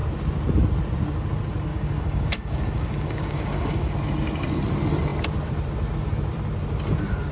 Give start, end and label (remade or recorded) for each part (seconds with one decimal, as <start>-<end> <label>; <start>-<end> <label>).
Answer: 0.0-1.7 recorded; 1.7-3.9 remade; 3.9-7.3 recorded